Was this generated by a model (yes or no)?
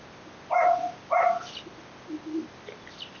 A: no